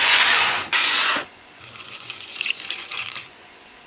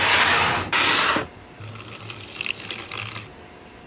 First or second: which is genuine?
second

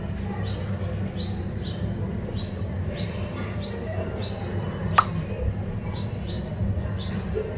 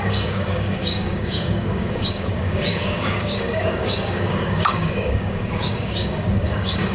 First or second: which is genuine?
first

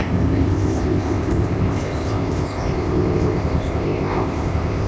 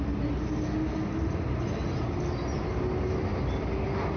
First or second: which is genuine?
second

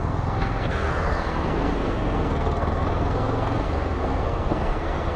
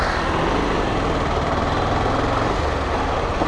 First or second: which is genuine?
second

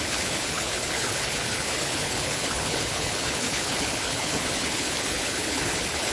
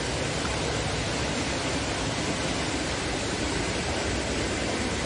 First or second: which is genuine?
second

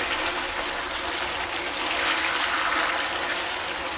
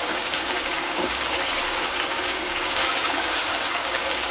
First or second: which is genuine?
first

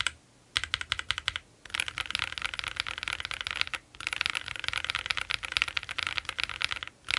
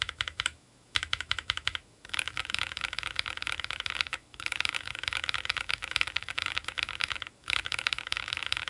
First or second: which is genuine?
first